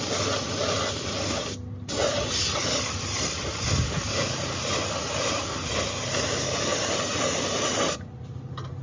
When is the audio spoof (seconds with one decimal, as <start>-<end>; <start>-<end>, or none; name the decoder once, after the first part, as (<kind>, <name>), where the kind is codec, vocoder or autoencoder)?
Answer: 2.6-3.8 (vocoder, BigVGAN v2); 6.7-7.8